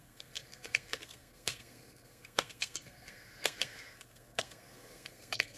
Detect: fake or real fake